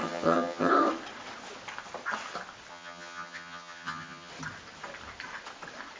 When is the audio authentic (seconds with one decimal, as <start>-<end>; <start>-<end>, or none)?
0.7-2.7; 4.3-6.0